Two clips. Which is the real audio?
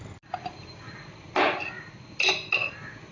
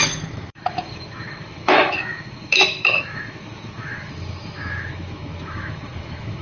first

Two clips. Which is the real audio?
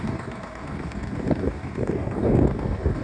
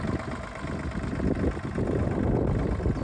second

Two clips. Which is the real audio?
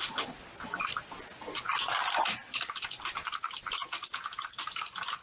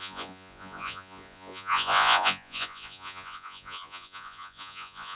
first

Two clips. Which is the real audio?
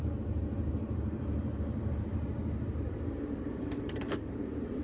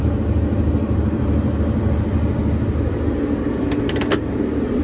second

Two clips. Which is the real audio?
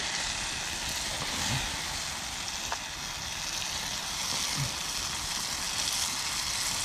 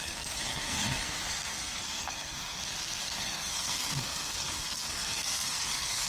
first